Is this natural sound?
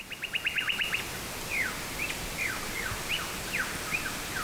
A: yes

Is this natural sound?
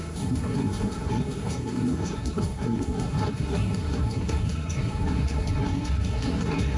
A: no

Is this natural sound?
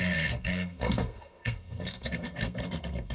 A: no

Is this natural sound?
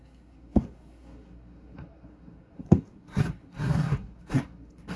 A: no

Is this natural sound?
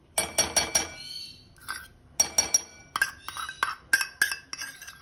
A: yes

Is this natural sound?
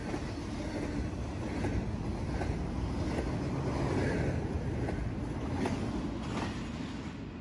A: yes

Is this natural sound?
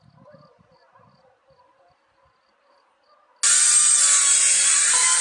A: yes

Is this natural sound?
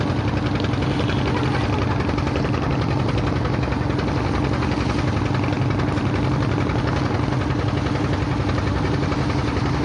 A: yes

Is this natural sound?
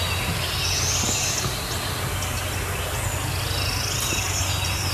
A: yes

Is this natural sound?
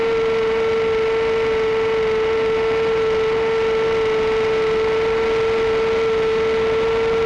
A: yes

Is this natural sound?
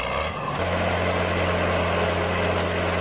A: yes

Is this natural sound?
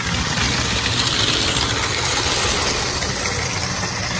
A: yes